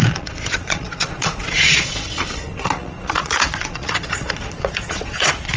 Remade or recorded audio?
remade